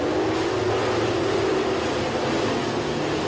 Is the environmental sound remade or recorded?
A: recorded